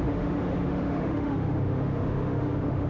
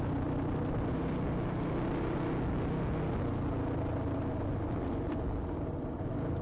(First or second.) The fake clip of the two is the first